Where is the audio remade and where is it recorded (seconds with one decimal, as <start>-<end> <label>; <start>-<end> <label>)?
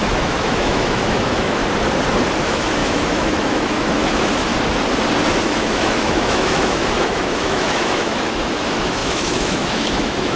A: 0.0-1.6 remade; 1.6-2.4 recorded; 2.4-4.5 remade; 4.5-5.5 recorded; 5.5-10.4 remade